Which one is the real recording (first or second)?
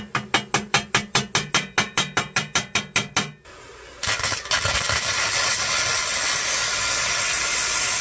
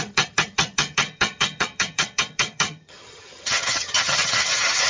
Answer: first